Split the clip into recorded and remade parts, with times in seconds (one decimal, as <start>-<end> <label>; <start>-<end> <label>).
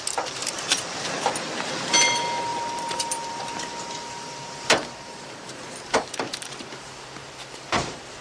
0.0-0.4 recorded; 0.4-1.3 remade; 1.3-2.5 recorded; 2.5-3.7 remade; 3.7-8.2 recorded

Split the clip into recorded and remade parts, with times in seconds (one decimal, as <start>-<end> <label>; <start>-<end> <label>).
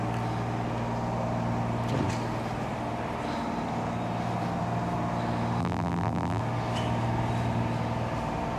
0.0-5.6 recorded; 5.6-6.4 remade; 6.4-8.6 recorded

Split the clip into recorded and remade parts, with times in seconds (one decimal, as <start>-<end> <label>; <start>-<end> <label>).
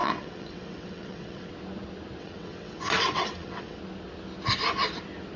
0.0-1.5 remade; 1.5-2.2 recorded; 2.2-3.8 remade; 3.8-5.4 recorded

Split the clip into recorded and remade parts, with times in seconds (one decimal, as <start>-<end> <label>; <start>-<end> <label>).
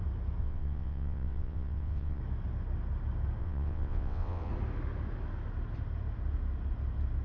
0.0-0.4 recorded; 0.4-2.2 remade; 2.2-3.4 recorded; 3.4-4.5 remade; 4.5-7.2 recorded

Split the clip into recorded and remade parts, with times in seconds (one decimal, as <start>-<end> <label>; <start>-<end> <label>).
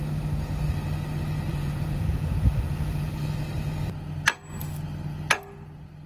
0.0-1.5 recorded; 1.5-3.1 remade; 3.1-6.1 recorded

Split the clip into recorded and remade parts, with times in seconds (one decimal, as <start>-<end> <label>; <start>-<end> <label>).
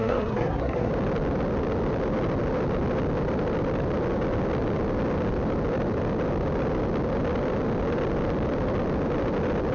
0.0-0.9 remade; 0.9-9.7 recorded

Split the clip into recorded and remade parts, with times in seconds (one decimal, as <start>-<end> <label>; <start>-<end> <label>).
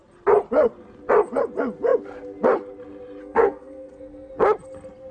0.0-3.2 recorded; 3.2-4.3 remade; 4.3-5.1 recorded